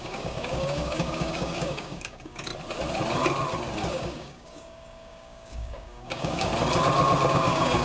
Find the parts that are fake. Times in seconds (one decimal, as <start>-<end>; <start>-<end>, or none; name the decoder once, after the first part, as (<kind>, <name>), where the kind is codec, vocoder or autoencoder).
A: 0.0-2.5 (codec, DAC); 3.9-6.5; 7.3-7.8